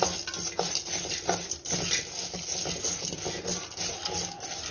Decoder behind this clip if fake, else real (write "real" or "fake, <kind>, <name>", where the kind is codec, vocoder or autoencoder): real